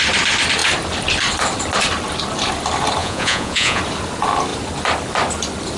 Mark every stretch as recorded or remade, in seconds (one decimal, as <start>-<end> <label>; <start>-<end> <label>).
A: 0.0-3.0 recorded; 3.0-3.8 remade; 3.8-5.8 recorded